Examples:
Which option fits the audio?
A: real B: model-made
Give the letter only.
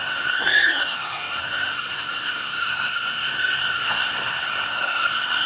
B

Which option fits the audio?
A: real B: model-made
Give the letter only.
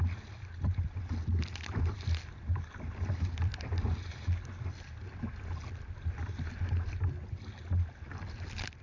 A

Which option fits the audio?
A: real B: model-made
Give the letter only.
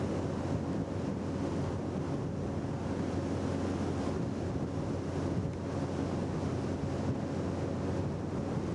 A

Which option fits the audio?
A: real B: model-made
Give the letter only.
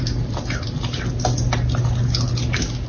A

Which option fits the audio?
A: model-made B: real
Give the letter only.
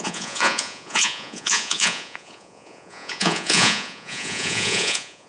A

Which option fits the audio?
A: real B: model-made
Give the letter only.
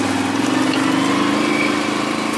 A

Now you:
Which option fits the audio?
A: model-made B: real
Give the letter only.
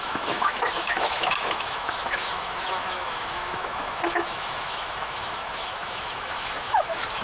A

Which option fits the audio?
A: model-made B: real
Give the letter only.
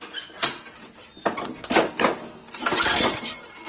B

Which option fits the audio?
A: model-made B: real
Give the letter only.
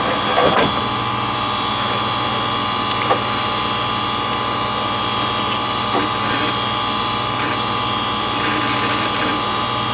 B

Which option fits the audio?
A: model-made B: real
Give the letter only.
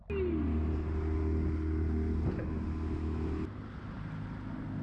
B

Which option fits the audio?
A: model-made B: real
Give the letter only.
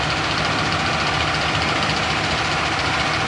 B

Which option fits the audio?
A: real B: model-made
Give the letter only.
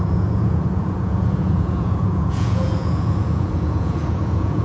B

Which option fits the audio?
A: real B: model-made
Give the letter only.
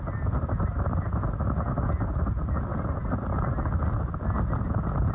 A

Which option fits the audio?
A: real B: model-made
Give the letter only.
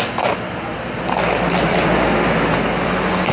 A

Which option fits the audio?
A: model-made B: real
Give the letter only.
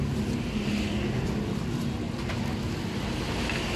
B